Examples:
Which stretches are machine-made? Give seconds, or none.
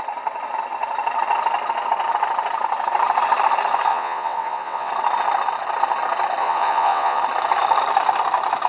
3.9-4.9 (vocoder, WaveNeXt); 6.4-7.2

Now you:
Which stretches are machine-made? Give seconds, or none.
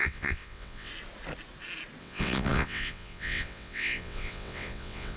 0.0-0.9 (vocoder, WaveNeXt); 2.0-5.2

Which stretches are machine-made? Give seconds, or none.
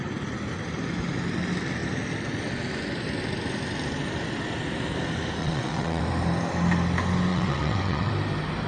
5.4-6.0 (vocoder, WaveNeXt); 7.3-8.1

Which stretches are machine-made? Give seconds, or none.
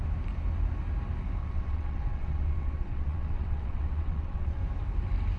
1.4-4.6 (vocoder, WaveNeXt)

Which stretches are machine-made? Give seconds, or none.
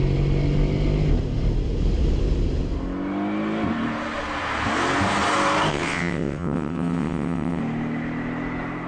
5.7-7.6 (vocoder, WaveNeXt)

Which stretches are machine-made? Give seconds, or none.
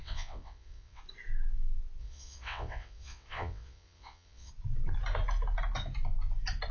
0.0-1.0 (vocoder, WaveNeXt); 2.0-4.5